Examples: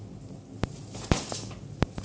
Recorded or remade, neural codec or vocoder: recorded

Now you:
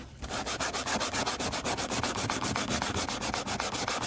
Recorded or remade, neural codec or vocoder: recorded